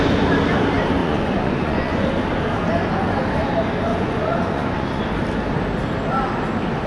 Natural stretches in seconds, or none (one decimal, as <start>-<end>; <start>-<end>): 0.0-1.0; 2.1-3.9; 5.0-6.9